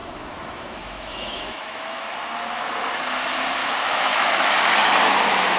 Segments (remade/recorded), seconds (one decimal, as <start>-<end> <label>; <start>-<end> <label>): 0.0-2.0 remade; 2.0-3.6 recorded; 3.6-4.5 remade; 4.5-5.6 recorded